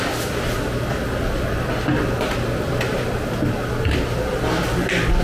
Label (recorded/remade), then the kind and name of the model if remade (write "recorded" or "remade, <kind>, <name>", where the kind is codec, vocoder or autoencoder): recorded